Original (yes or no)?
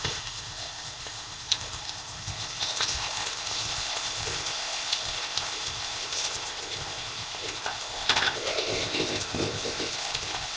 no